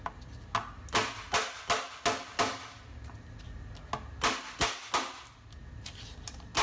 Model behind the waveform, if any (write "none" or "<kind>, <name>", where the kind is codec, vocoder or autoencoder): none